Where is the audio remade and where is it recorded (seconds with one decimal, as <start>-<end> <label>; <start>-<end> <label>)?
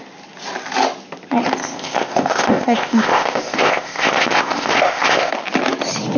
0.0-1.6 recorded; 1.6-5.3 remade; 5.3-6.2 recorded